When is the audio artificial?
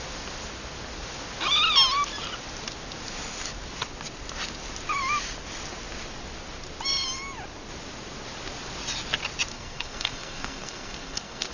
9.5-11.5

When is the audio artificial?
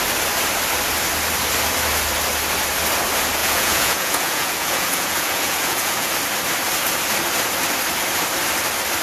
3.4-6.1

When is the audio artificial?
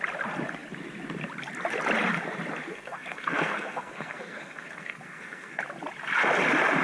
2.7-5.6